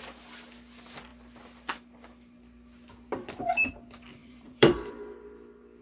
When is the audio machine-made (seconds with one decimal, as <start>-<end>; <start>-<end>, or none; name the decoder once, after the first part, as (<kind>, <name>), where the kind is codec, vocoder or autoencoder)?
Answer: 4.2-4.9 (vocoder, BigVGAN v2)